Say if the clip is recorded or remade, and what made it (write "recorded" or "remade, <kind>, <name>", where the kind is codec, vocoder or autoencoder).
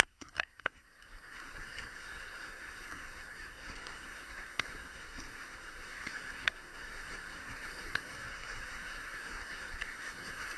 remade, codec, SNAC